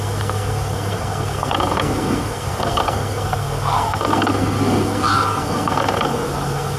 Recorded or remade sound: remade